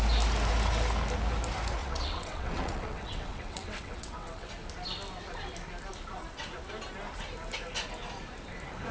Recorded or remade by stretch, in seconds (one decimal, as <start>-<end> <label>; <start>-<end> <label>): 0.0-1.8 recorded; 1.8-4.5 remade; 4.5-8.9 recorded